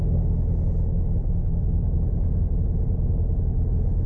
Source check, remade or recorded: recorded